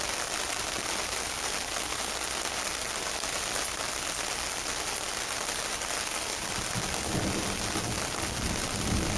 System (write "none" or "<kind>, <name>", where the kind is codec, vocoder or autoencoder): none